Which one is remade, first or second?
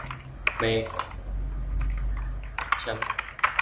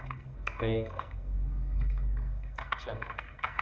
second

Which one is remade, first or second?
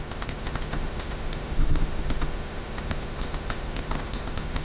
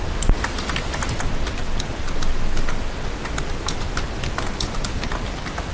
first